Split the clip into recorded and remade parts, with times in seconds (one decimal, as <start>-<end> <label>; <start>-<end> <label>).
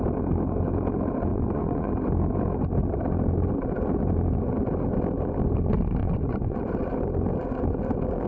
0.0-1.3 recorded; 1.3-1.9 remade; 1.9-6.0 recorded; 6.0-6.6 remade; 6.6-8.3 recorded